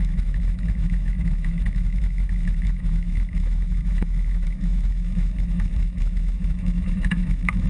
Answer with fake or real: fake